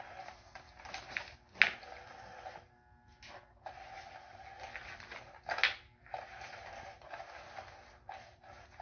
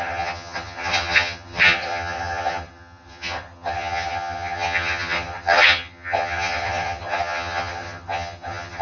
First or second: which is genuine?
first